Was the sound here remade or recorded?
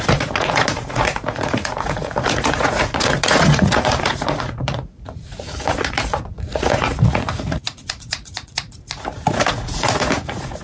remade